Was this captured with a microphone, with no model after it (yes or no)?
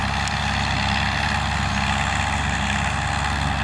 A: yes